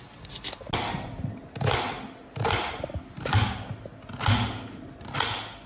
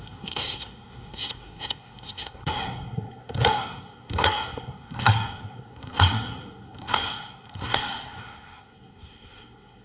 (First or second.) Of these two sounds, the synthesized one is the second